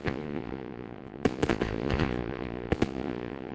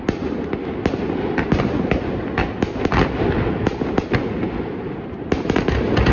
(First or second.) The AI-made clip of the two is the first